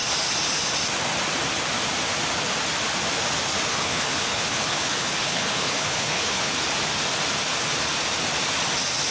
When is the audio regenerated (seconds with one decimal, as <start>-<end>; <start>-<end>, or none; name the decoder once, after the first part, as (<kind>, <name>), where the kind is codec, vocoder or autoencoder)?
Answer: 3.7-6.5 (codec, HILCodec)